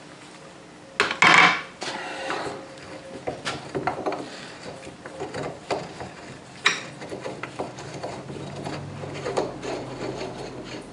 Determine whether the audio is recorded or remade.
recorded